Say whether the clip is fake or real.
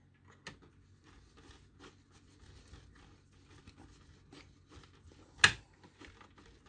real